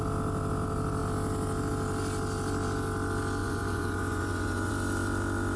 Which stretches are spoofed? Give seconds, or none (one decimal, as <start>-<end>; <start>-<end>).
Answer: 3.4-4.7